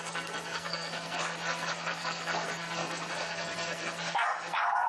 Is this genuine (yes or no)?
no